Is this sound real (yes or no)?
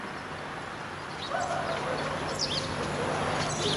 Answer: yes